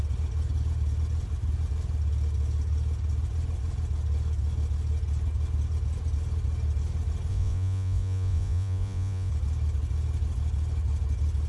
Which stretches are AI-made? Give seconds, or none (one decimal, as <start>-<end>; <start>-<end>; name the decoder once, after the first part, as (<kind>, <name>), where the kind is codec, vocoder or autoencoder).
7.3-9.3 (vocoder, Vocos)